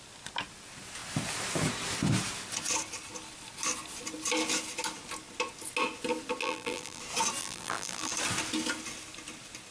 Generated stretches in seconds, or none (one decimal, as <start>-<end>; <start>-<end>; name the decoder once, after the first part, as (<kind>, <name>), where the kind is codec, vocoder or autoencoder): 6.4-7.0 (vocoder, BigVGAN v2); 7.4-8.1